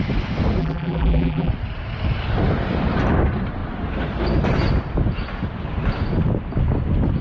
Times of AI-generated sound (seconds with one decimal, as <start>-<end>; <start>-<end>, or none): 0.6-1.5